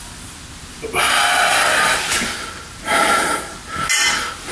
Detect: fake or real real